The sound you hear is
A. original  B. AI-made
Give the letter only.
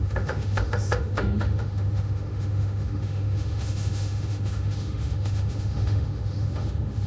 B